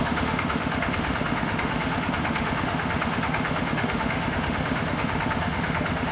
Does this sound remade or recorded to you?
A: remade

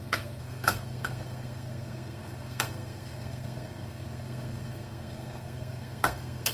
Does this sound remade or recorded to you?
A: remade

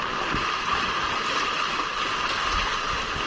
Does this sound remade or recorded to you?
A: recorded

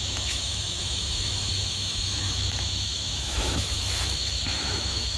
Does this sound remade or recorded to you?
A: remade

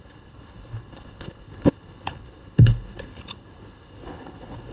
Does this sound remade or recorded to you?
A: remade